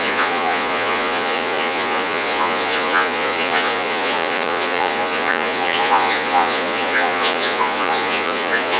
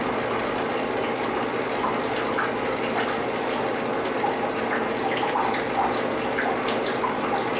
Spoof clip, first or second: first